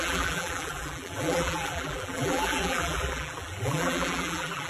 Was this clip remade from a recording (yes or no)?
yes